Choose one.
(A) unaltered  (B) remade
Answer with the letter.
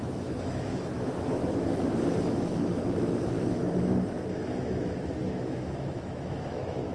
B